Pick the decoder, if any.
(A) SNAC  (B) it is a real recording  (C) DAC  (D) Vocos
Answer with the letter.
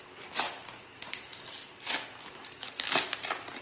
B